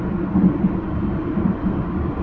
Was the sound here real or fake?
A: real